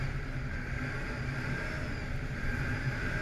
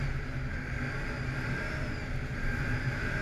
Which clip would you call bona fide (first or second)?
second